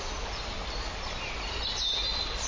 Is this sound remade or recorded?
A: recorded